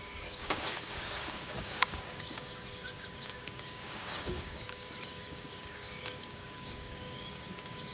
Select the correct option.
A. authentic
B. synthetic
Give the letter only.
B